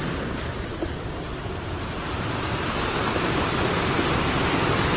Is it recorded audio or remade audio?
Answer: recorded